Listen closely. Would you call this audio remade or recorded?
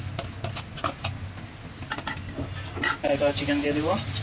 recorded